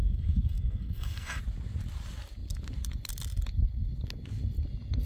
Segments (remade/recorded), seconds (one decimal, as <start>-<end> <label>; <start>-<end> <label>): 0.0-1.4 remade; 1.4-5.1 recorded